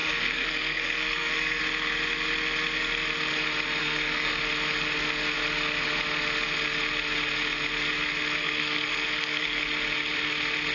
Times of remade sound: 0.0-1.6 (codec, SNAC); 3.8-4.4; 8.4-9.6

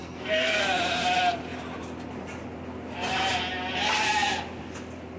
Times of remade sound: 0.0-0.6 (codec, SNAC)

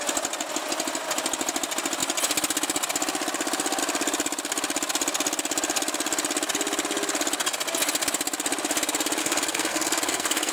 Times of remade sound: 9.2-10.5 (codec, SNAC)

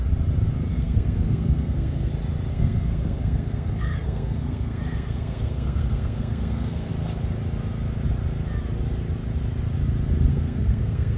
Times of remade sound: 0.7-2.1 (codec, SNAC); 2.5-6.9; 10.3-11.2